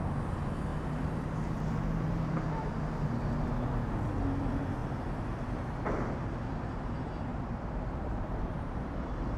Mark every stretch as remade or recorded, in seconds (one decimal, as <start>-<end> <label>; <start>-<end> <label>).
0.0-0.7 recorded; 0.7-3.3 remade; 3.3-4.8 recorded; 4.8-5.5 remade; 5.5-7.3 recorded; 7.3-8.9 remade; 8.9-9.4 recorded